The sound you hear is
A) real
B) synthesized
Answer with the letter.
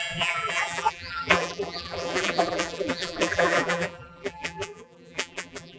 B